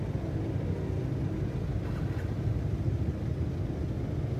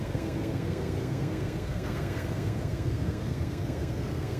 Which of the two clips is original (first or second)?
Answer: first